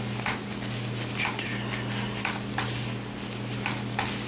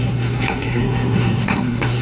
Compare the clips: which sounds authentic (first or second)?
first